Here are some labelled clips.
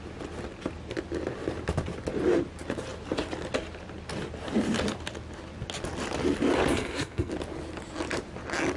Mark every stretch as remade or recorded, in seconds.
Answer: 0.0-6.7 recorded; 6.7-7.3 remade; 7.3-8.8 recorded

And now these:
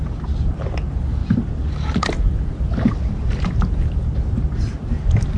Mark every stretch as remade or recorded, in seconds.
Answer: 0.0-5.4 recorded

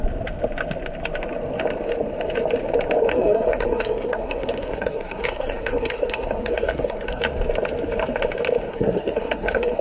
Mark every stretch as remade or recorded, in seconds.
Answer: 0.0-3.1 recorded; 3.1-7.2 remade; 7.2-8.7 recorded; 8.7-9.8 remade

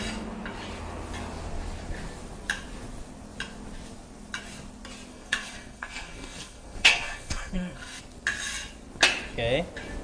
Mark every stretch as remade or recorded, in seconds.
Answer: 0.0-5.1 recorded; 5.1-8.0 remade; 8.0-10.0 recorded

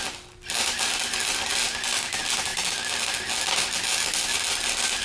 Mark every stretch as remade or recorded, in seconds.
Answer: 0.0-5.0 recorded